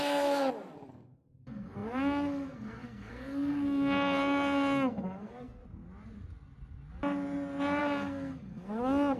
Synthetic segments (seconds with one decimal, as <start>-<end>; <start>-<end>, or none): 0.0-0.4; 0.9-5.6; 7.8-9.2